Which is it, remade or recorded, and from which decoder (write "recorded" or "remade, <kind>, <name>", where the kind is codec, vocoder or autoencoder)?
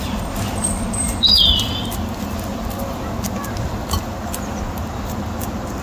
recorded